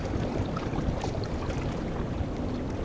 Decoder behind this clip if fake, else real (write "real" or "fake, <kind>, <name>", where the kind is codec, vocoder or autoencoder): fake, vocoder, BigVGAN v2